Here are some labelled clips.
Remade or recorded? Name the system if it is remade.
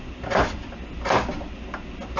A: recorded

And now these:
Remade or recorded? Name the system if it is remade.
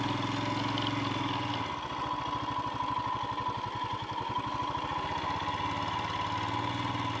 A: recorded